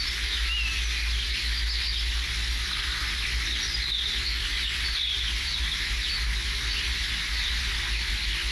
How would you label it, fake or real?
real